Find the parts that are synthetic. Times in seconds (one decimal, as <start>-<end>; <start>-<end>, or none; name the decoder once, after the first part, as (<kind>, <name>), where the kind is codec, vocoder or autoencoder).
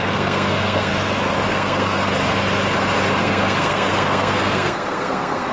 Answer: 0.0-0.9 (codec, SNAC); 1.5-2.0; 3.2-5.5